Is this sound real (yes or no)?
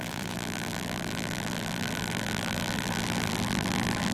no